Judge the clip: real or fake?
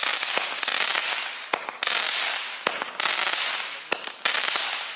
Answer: real